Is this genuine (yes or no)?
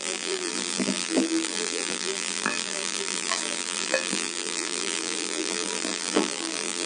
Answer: no